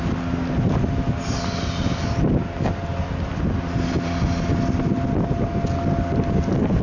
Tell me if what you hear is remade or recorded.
recorded